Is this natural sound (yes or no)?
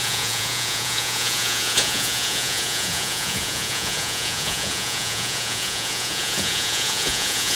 no